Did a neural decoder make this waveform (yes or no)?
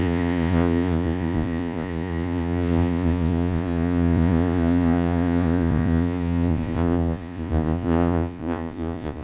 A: yes